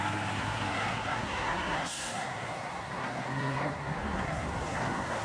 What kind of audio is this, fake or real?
fake